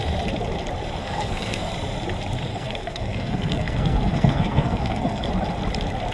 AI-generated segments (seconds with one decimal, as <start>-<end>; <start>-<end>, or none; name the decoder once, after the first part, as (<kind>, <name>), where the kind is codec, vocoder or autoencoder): 1.0-1.7 (codec, SNAC); 2.5-5.3